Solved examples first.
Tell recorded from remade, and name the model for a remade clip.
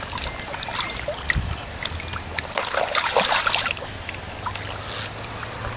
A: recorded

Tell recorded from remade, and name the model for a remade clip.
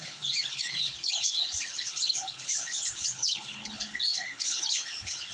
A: remade, codec, HILCodec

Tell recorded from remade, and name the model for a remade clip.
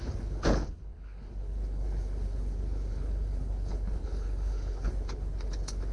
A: remade, codec, HILCodec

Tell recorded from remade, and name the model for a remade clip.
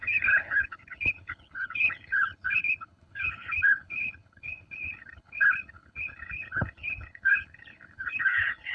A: remade, codec, HILCodec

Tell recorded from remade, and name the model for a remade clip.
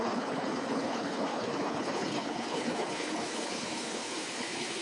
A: remade, codec, HILCodec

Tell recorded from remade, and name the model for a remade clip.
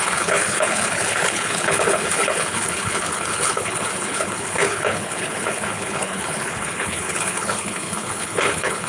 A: remade, codec, HILCodec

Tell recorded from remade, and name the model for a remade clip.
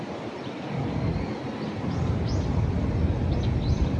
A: recorded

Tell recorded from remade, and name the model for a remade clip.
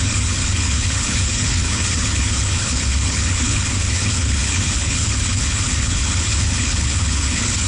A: remade, codec, HILCodec